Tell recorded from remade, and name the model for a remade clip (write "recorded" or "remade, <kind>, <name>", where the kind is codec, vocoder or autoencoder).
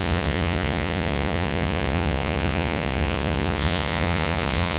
remade, vocoder, Vocos